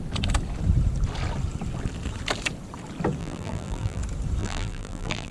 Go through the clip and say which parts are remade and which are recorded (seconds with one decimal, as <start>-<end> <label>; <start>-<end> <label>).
0.0-3.2 recorded; 3.2-4.0 remade; 4.0-4.4 recorded; 4.4-5.3 remade